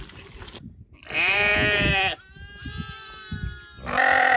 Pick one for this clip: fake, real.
real